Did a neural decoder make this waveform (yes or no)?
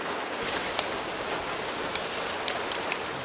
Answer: no